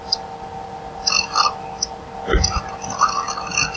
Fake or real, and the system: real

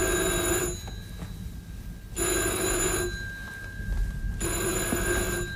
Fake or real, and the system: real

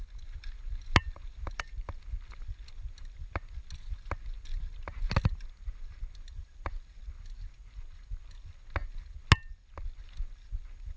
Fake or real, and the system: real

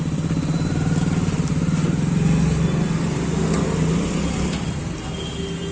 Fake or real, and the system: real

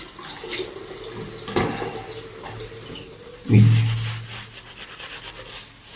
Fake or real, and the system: real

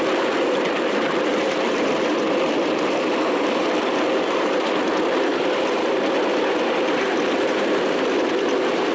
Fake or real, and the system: fake, vocoder, BigVGAN v2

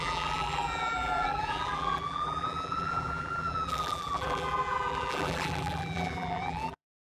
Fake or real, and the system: fake, vocoder, BigVGAN v2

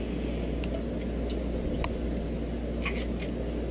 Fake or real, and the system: real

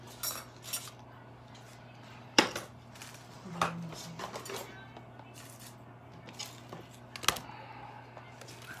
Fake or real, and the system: real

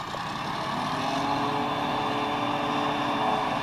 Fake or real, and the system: real